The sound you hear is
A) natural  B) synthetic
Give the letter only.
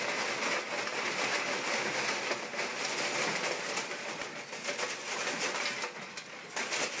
A